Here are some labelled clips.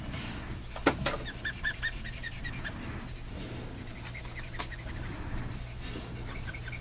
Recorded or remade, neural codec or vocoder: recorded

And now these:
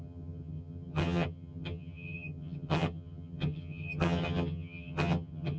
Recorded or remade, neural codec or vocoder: remade, vocoder, HiFi-GAN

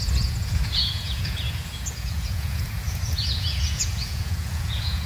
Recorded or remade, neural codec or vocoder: remade, vocoder, Vocos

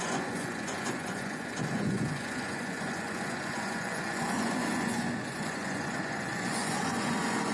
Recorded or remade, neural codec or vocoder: remade, vocoder, Vocos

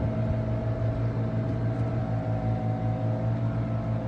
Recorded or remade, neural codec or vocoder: recorded